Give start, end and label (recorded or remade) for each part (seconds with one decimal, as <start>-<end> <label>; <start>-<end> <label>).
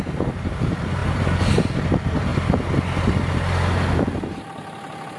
0.0-5.2 recorded